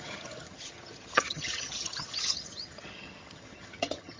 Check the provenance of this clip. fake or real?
fake